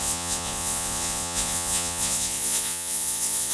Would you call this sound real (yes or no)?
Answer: no